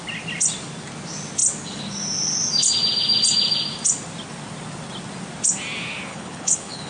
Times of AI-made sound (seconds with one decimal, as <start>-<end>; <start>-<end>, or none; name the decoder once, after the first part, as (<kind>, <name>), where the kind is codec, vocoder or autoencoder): 6.1-6.9 (codec, HILCodec)